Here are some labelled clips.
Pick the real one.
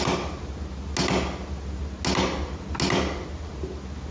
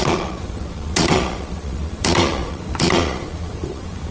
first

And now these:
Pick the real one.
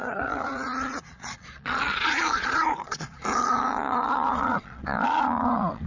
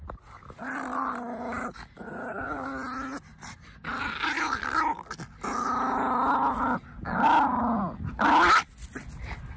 second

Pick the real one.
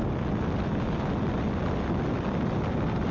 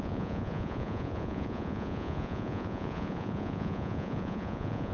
first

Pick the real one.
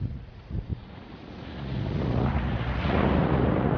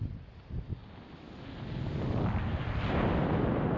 second